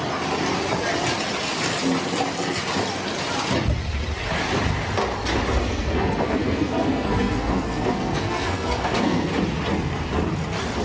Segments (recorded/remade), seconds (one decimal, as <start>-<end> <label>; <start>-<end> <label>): 0.0-5.6 recorded; 5.6-9.3 remade; 9.3-10.8 recorded